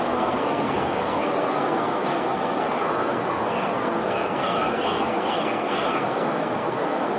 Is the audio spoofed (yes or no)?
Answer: yes